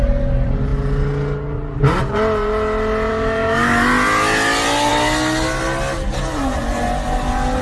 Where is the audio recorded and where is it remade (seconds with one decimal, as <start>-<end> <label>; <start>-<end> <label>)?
0.0-3.1 recorded; 3.1-3.9 remade; 3.9-7.6 recorded